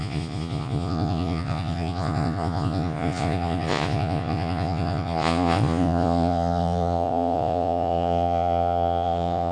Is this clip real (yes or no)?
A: no